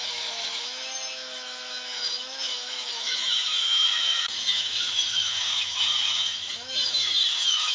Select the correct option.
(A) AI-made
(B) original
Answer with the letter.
A